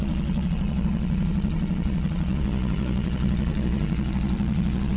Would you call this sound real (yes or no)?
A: no